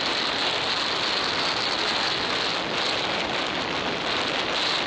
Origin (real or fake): real